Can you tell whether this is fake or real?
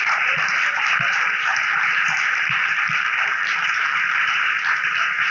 fake